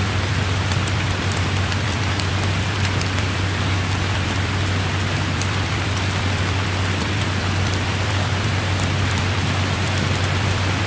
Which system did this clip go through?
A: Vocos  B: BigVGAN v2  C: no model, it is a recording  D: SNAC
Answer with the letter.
B